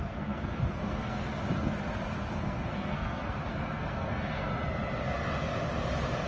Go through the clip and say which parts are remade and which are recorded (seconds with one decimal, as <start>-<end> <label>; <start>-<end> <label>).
0.0-1.3 remade; 1.3-2.4 recorded; 2.4-4.5 remade; 4.5-6.3 recorded